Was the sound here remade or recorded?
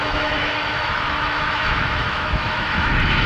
remade